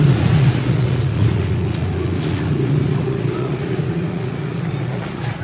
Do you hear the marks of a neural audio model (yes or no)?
yes